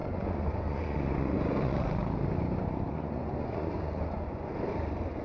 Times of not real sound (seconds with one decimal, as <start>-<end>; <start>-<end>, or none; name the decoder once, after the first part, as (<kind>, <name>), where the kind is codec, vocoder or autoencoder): 0.0-2.0 (vocoder, Vocos); 2.9-4.5